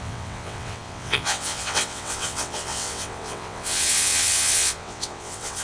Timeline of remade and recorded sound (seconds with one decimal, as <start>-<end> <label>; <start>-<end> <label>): 0.0-5.6 remade